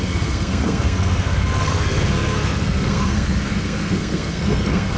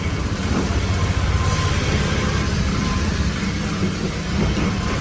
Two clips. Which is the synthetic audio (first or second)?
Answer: first